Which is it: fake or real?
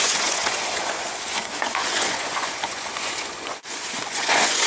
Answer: fake